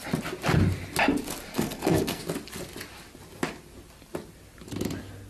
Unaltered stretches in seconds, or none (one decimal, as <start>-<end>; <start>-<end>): 0.0-1.5; 2.2-5.3